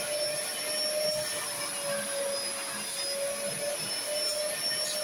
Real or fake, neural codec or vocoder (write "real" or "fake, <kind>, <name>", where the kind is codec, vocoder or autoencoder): real